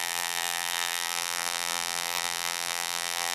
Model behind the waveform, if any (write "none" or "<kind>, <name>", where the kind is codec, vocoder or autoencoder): vocoder, BigVGAN v2